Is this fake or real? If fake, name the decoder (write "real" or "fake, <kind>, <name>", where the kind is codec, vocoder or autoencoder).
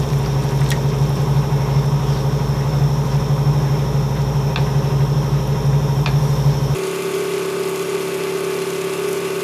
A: real